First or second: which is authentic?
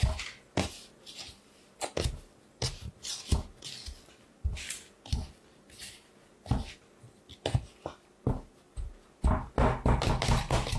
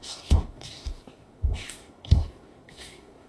first